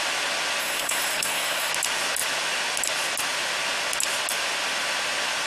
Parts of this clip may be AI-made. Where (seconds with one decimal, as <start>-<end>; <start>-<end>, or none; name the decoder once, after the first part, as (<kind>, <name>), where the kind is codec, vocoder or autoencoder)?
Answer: 0.6-1.7 (codec, SNAC)